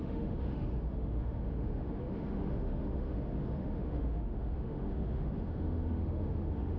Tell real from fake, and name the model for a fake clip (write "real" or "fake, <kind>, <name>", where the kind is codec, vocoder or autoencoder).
fake, autoencoder, DAC-VAE